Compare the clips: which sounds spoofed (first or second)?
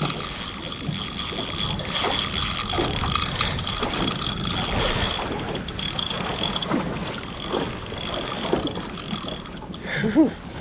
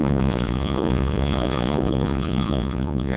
second